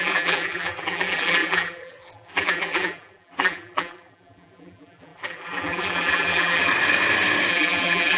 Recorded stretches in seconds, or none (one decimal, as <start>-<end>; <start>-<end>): 6.7-7.5